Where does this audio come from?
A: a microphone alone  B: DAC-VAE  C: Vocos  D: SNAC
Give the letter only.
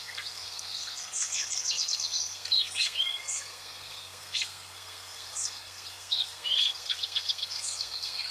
D